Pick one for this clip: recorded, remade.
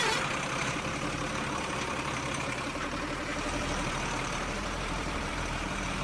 remade